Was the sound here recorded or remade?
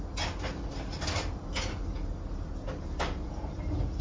recorded